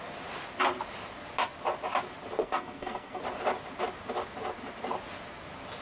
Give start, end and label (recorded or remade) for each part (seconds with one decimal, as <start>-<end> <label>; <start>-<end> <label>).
0.0-2.4 recorded; 2.4-3.2 remade; 3.2-5.8 recorded